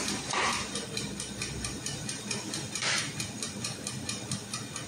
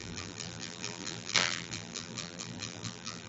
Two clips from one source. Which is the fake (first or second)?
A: second